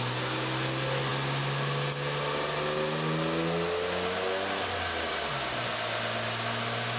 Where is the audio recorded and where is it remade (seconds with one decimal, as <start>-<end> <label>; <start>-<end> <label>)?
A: 0.0-7.0 recorded